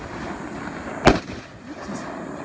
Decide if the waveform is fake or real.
real